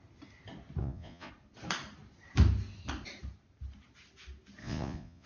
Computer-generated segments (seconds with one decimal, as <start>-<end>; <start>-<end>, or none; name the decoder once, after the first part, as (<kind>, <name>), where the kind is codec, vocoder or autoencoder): 0.8-1.3 (vocoder, Vocos); 4.6-5.3